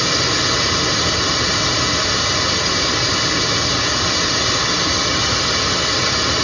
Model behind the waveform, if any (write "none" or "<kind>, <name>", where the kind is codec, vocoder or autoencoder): none